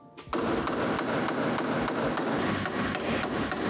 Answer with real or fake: real